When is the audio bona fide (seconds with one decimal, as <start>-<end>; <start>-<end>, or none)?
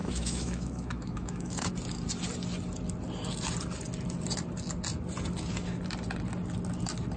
1.7-7.2